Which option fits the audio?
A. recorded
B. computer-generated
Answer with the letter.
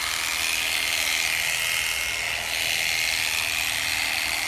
A